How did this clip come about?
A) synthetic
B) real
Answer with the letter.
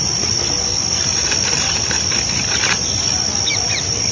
B